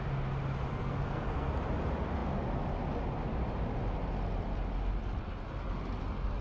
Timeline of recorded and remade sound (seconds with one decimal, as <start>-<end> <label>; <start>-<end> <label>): 0.0-0.7 recorded; 0.7-1.5 remade; 1.5-6.4 recorded